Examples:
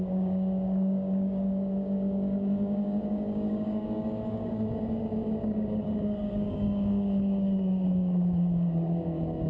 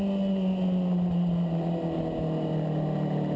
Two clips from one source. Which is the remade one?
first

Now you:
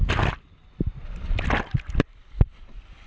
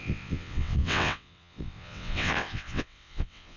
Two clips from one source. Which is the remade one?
second